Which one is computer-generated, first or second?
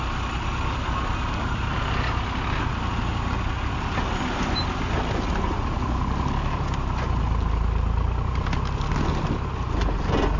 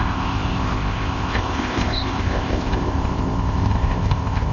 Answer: second